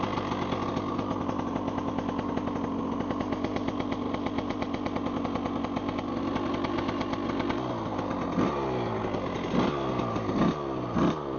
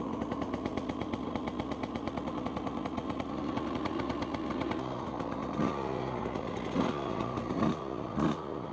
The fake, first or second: second